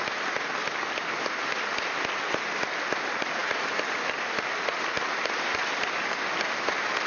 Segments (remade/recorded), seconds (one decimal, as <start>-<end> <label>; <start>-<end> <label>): 0.0-7.1 recorded